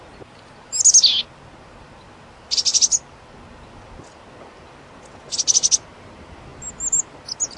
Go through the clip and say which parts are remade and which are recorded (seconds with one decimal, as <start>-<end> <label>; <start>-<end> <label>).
0.0-7.6 recorded